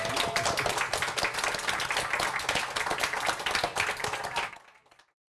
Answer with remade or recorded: recorded